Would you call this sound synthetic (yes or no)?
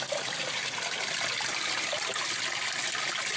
yes